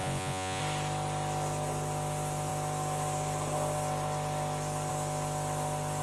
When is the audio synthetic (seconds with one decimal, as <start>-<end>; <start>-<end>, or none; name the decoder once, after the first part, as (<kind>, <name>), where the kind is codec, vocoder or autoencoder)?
0.0-0.6 (vocoder, Vocos)